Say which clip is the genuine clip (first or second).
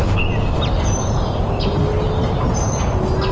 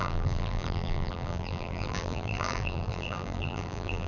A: first